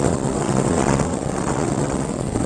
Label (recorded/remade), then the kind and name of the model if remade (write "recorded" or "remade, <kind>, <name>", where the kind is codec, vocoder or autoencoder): remade, vocoder, WaveNeXt